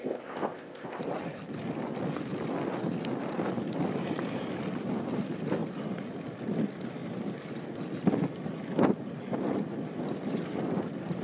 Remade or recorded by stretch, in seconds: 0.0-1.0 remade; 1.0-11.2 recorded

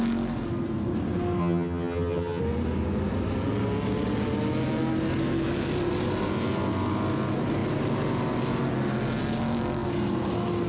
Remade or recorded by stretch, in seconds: 0.0-1.4 recorded; 1.4-2.4 remade; 2.4-10.7 recorded

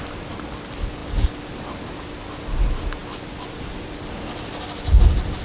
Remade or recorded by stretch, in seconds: 0.0-5.4 recorded

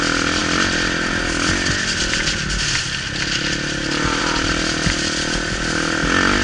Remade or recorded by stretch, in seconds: 0.0-6.4 recorded

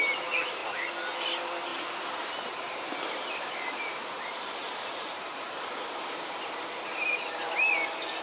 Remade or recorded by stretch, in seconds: 0.0-1.7 recorded; 1.7-6.6 remade; 6.6-8.2 recorded